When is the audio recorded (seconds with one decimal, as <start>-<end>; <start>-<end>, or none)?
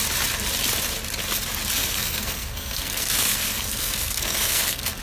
0.0-1.8